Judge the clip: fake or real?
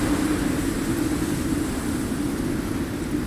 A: real